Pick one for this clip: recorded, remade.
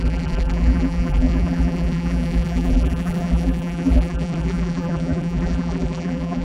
remade